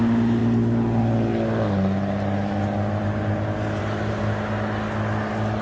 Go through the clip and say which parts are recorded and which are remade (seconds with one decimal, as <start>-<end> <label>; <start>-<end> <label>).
0.0-5.6 recorded